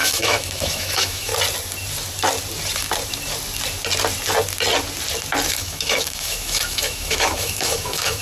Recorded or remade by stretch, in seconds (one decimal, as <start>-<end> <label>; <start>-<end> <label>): 0.0-1.3 remade; 1.3-5.5 recorded; 5.5-8.2 remade